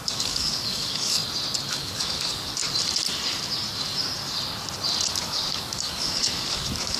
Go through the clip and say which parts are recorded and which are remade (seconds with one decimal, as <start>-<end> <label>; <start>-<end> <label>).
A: 0.0-1.2 remade; 1.2-1.7 recorded; 1.7-2.6 remade; 2.6-5.1 recorded; 5.1-7.0 remade